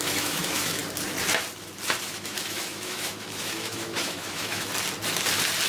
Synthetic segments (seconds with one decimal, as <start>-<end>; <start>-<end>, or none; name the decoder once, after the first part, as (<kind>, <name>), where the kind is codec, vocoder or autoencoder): 0.0-0.8 (autoencoder, DAC-VAE); 2.0-4.7